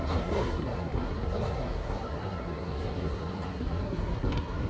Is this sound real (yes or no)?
no